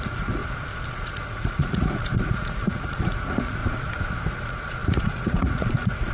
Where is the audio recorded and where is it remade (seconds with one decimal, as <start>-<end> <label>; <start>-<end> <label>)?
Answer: 0.0-0.4 remade; 0.4-0.9 recorded; 0.9-3.6 remade; 3.6-4.3 recorded; 4.3-6.1 remade